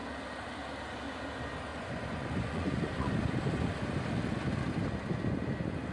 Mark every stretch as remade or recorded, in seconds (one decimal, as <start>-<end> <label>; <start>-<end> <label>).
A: 0.0-1.7 recorded; 1.7-3.1 remade; 3.1-5.9 recorded